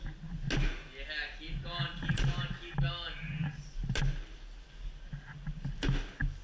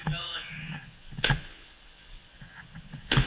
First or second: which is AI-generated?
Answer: second